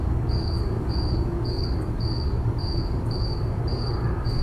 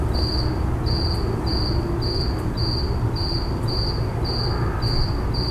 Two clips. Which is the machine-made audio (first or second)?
first